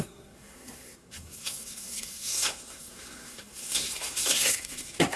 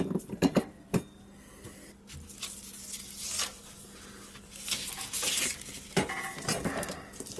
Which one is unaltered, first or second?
second